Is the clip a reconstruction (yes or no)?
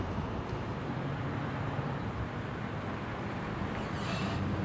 yes